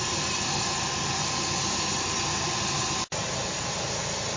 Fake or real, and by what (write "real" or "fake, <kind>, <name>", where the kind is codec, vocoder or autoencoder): real